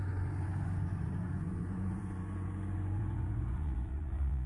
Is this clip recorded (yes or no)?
no